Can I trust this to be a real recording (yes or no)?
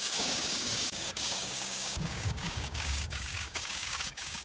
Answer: no